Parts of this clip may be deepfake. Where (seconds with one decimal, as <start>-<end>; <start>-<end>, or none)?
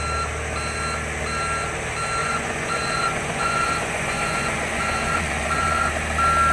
2.2-5.9